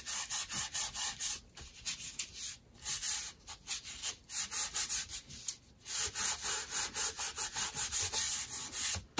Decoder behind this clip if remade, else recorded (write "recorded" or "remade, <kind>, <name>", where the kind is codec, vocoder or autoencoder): recorded